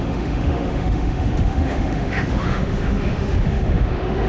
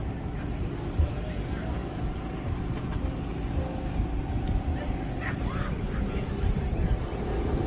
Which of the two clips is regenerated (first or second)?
first